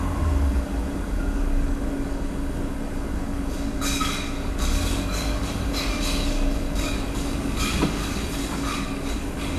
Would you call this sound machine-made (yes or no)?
yes